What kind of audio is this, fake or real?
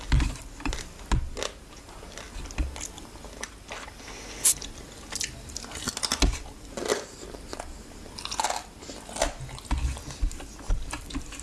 real